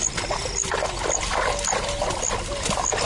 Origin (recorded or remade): recorded